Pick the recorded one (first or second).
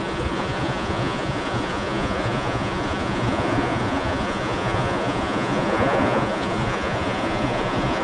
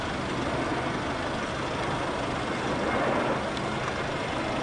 second